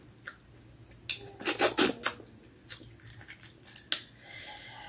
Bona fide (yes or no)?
yes